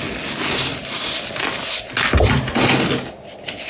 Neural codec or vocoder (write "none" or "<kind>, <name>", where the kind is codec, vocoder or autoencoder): none